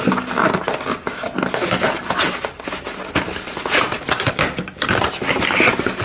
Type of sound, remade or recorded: recorded